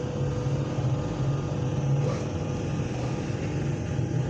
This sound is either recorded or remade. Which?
recorded